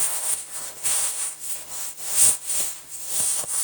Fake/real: fake